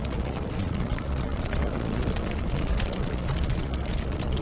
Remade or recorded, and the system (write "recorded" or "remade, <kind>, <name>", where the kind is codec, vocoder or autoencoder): remade, vocoder, Vocos